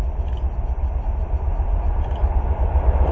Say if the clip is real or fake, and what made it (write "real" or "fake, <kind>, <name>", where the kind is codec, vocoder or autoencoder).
real